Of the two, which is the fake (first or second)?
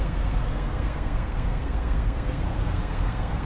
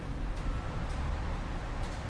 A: first